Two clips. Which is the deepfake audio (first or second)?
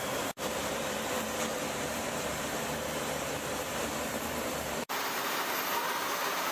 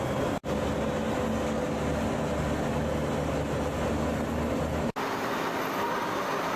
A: first